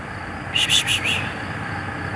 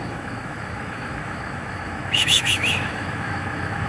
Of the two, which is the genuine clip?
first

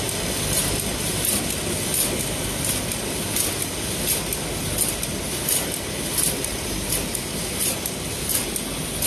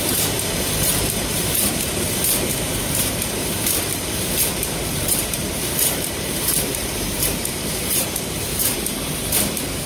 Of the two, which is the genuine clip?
first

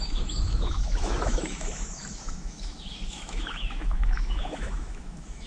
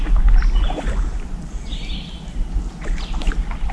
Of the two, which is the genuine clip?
second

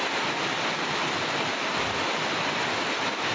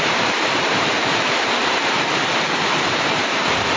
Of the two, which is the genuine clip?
first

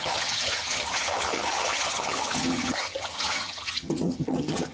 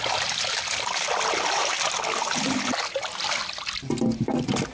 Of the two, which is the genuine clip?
second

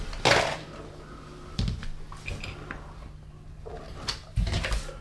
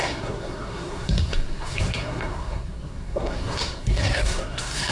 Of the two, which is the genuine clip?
first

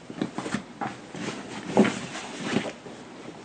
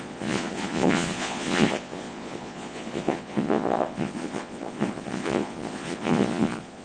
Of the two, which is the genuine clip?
first